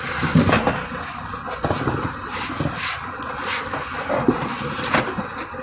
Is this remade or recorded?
recorded